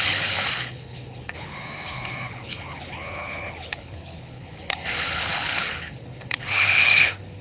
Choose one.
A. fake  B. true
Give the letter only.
A